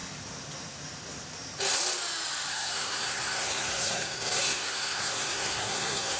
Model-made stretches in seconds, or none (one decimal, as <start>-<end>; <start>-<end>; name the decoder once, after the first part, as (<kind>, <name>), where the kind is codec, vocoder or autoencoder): 2.5-6.2 (codec, SNAC)